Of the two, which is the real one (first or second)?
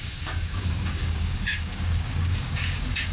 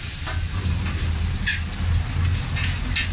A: second